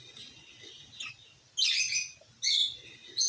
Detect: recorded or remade recorded